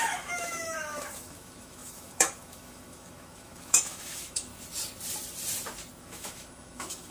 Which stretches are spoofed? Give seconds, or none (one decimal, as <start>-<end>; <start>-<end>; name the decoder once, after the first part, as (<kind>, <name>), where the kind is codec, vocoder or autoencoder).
0.0-4.5 (autoencoder, DAC-VAE); 6.0-7.1